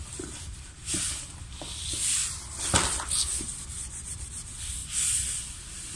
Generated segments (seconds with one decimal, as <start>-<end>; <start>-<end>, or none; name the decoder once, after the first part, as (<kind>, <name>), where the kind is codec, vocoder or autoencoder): 0.0-2.2 (vocoder, BigVGAN v2); 3.4-4.8; 5.6-6.0